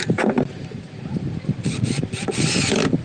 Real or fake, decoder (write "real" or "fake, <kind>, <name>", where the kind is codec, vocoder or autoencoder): real